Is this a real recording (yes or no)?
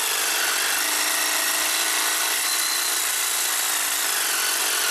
yes